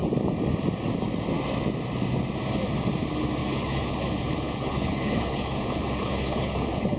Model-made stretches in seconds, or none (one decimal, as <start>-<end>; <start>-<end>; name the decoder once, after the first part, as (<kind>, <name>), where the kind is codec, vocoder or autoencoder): 3.4-7.0 (codec, HILCodec)